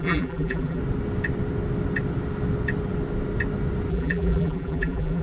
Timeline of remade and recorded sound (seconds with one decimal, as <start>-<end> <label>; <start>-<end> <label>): 0.0-0.8 remade; 0.8-3.9 recorded; 3.9-5.2 remade